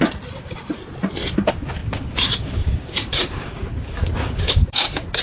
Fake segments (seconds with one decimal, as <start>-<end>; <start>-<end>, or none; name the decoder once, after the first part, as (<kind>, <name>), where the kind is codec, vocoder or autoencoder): 1.8-5.2 (codec, DAC)